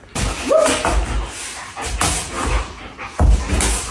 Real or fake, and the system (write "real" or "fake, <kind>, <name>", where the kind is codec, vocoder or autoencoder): real